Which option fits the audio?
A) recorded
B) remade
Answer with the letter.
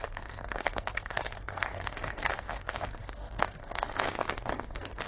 B